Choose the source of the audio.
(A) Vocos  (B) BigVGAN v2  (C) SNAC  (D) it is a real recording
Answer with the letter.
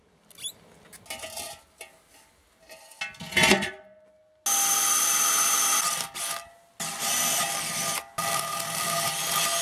D